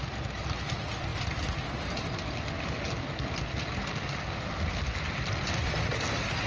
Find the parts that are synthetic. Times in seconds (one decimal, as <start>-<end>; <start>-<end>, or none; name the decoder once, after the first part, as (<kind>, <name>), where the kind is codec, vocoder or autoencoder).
none